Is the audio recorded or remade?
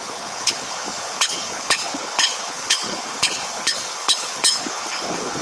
remade